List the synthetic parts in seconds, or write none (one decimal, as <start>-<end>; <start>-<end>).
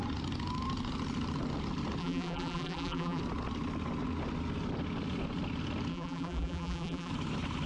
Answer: 2.0-3.2; 5.9-7.1